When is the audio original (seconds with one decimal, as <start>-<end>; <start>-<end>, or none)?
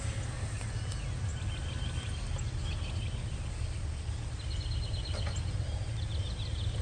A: 0.0-6.8